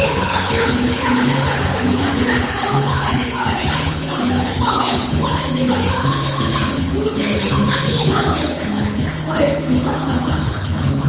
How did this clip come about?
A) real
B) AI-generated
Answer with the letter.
B